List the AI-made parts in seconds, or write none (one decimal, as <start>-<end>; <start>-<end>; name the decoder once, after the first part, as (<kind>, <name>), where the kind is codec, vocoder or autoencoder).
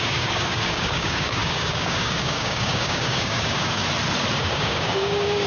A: 0.0-3.8 (codec, DAC); 4.4-5.5